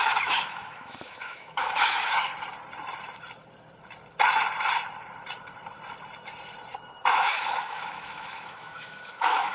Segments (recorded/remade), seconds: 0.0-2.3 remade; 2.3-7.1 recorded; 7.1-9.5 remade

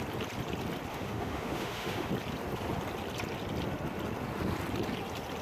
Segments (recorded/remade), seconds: 0.0-0.9 recorded; 0.9-2.1 remade; 2.1-5.4 recorded

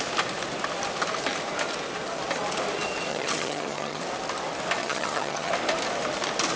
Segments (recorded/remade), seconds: 0.0-3.1 recorded; 3.1-4.0 remade; 4.0-4.8 recorded; 4.8-5.5 remade; 5.5-6.6 recorded

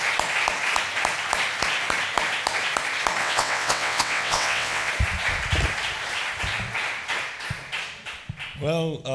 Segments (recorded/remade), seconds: 0.0-3.2 recorded; 3.2-4.9 remade; 4.9-9.1 recorded

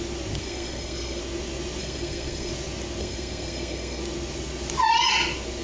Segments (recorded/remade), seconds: 0.0-0.4 recorded; 0.4-1.2 remade; 1.2-1.8 recorded; 1.8-2.5 remade; 2.5-3.0 recorded; 3.0-4.0 remade; 4.0-5.6 recorded

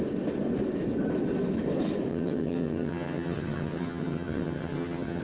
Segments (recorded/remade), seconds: 0.0-2.1 recorded; 2.1-5.2 remade

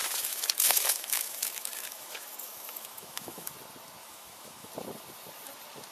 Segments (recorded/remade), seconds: 0.0-3.5 remade; 3.5-4.0 recorded; 4.0-4.7 remade; 4.7-5.9 recorded

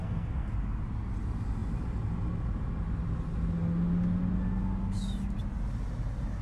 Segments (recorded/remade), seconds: 0.0-0.5 remade; 0.5-6.4 recorded